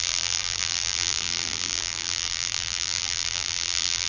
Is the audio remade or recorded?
remade